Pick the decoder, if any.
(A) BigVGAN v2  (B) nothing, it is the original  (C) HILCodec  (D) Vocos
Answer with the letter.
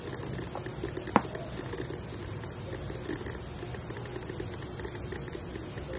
B